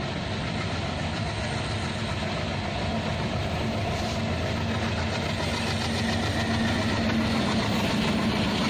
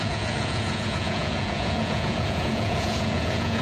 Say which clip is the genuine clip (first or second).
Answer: first